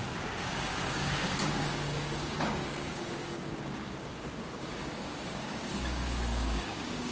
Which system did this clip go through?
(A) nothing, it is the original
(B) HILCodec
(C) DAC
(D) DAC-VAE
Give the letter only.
C